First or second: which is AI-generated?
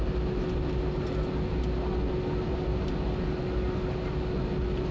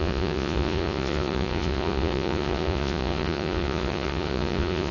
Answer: second